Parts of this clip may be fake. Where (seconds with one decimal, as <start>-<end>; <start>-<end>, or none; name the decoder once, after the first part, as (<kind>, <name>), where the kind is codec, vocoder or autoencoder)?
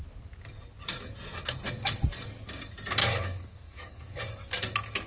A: 3.0-4.2 (codec, DAC)